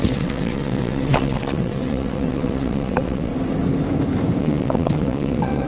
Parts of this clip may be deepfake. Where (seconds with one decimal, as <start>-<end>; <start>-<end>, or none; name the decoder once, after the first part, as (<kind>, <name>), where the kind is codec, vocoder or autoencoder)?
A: 0.0-3.3 (vocoder, WaveNeXt); 4.4-5.7